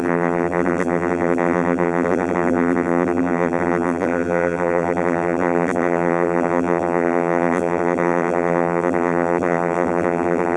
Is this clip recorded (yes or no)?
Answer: no